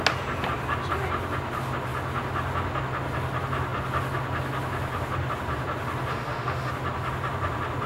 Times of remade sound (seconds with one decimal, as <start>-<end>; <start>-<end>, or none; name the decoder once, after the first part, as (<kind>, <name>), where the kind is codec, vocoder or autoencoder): 6.1-6.7 (autoencoder, DAC-VAE)